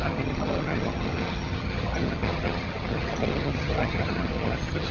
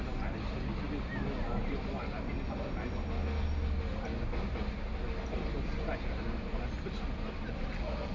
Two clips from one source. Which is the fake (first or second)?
first